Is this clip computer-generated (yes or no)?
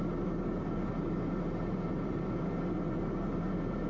no